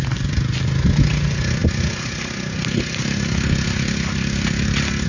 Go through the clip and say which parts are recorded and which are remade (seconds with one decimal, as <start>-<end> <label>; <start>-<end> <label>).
0.0-5.1 recorded